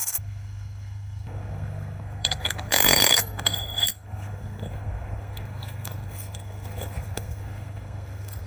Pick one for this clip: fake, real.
fake